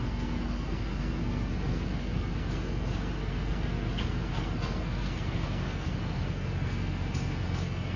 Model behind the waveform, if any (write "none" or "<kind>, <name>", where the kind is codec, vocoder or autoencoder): codec, SNAC